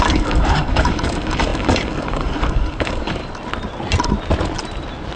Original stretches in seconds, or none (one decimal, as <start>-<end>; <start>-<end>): 3.2-5.2